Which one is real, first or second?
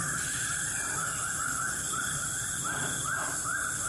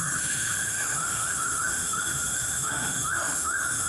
first